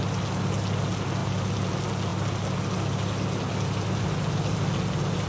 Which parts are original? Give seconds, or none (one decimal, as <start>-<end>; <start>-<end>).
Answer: 0.0-5.3